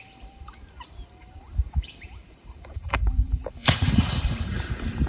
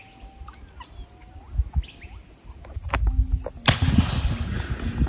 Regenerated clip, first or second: first